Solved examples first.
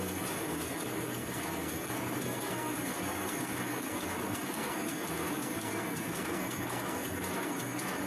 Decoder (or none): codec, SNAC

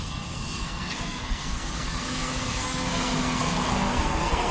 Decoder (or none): codec, SNAC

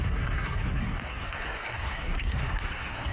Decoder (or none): codec, SNAC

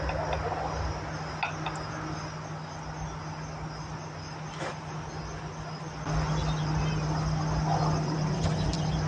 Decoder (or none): none